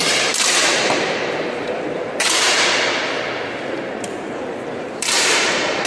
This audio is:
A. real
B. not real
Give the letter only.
B